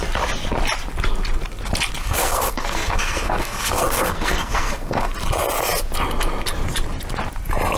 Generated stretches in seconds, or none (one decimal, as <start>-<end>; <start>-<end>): 2.0-5.1